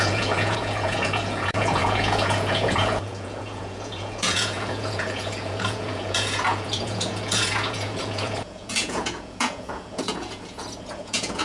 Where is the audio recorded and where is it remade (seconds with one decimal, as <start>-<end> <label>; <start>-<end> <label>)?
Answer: 0.0-11.4 remade